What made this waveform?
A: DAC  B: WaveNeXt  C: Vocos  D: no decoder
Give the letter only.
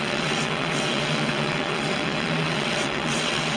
B